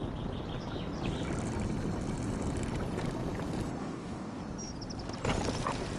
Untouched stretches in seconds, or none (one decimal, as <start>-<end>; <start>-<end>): 0.0-3.8; 4.4-6.0